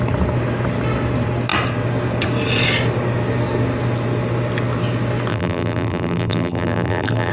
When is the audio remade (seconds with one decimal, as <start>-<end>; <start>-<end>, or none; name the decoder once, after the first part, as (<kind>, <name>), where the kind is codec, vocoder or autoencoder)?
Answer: 5.3-7.3 (vocoder, BigVGAN v2)